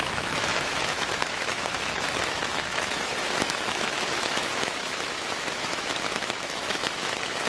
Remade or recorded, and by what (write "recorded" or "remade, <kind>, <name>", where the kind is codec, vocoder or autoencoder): remade, autoencoder, DAC-VAE